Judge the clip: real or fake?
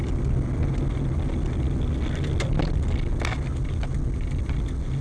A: real